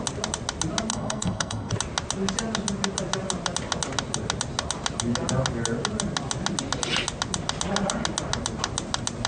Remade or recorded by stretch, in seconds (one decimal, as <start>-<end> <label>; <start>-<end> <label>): 0.0-0.9 recorded; 0.9-1.7 remade; 1.7-9.3 recorded